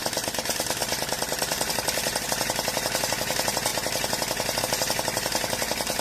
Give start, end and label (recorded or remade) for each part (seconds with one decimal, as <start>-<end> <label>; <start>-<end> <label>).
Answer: 0.0-6.0 recorded